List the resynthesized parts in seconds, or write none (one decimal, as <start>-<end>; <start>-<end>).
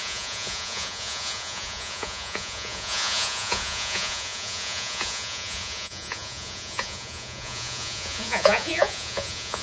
0.0-9.6